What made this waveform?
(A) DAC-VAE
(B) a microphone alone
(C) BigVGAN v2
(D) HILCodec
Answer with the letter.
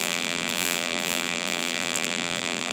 C